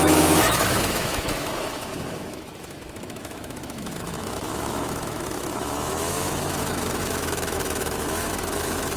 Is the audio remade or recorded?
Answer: remade